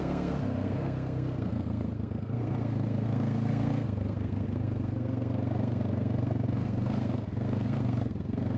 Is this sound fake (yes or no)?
yes